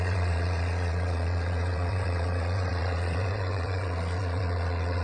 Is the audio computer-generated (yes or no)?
yes